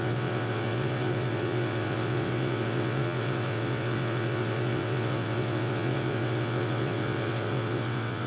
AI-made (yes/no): yes